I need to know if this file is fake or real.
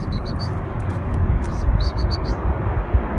fake